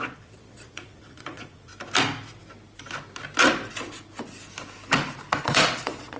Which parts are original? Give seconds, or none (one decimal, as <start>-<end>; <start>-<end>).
1.7-5.4